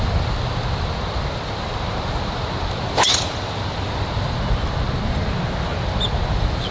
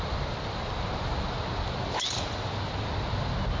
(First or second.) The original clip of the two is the second